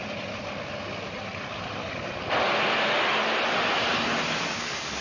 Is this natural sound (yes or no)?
yes